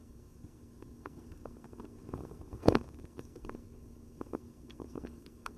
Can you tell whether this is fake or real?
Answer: fake